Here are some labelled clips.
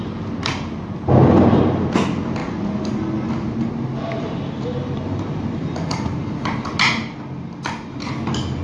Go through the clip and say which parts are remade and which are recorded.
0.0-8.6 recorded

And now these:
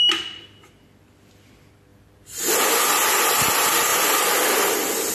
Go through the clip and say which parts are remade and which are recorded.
0.0-1.9 recorded; 1.9-3.5 remade; 3.5-3.9 recorded; 3.9-5.1 remade

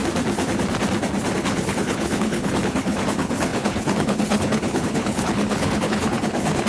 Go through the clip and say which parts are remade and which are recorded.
0.0-1.4 recorded; 1.4-6.7 remade